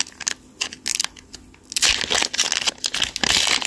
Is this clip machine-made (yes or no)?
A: no